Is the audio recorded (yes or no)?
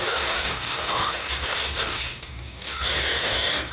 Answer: no